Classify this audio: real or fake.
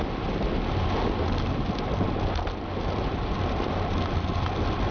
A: real